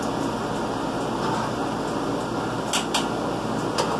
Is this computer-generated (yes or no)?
no